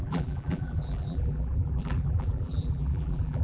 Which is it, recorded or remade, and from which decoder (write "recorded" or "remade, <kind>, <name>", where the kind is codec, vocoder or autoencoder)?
remade, vocoder, BigVGAN v2